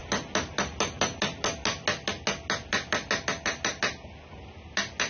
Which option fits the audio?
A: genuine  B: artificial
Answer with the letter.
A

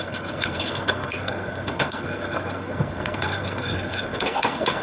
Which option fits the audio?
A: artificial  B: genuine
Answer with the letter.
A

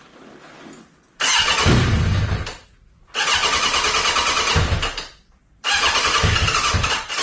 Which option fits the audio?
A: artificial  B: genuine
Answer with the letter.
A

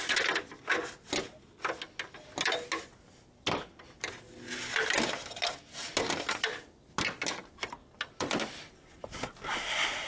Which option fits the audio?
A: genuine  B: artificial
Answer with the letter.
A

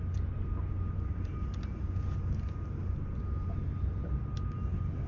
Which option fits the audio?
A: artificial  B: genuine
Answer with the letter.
B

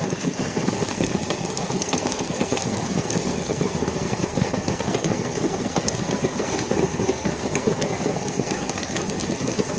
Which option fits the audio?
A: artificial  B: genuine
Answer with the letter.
A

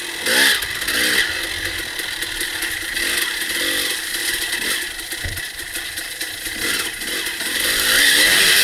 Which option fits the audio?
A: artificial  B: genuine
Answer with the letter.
B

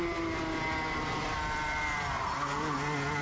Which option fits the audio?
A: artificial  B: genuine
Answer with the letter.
B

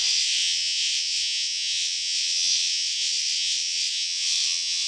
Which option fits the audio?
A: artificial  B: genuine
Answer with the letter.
A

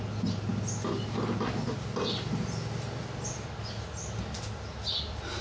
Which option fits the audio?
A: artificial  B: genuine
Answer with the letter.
B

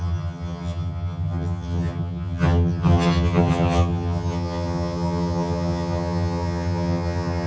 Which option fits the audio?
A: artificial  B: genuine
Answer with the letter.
A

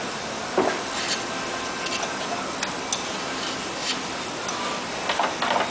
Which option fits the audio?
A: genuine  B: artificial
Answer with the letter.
A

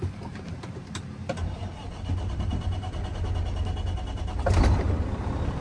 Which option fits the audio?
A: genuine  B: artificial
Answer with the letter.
A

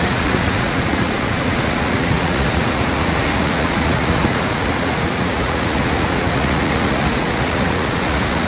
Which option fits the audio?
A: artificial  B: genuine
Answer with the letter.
A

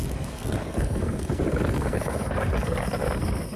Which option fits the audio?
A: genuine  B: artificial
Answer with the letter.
B